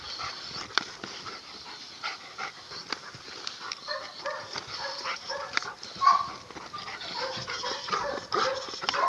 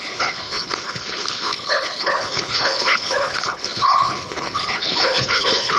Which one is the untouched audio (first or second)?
first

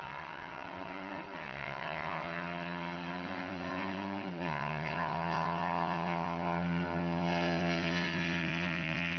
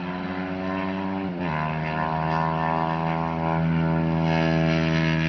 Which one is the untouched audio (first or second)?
second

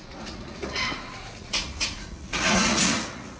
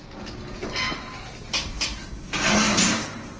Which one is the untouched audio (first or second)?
second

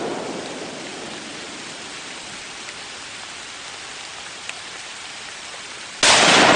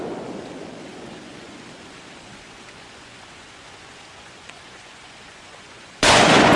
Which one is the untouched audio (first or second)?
first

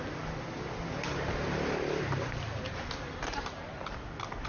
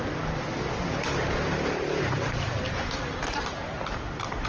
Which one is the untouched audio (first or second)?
first